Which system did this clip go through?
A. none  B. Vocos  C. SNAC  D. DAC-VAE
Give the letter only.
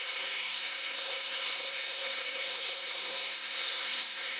C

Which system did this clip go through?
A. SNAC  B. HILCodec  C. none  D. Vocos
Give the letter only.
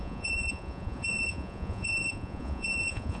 D